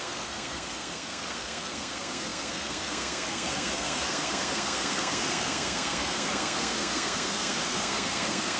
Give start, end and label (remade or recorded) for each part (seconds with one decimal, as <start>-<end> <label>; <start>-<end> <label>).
0.0-8.6 remade

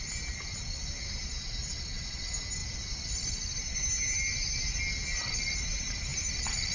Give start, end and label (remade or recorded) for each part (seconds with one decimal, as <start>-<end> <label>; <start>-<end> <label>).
0.0-6.1 recorded; 6.1-6.7 remade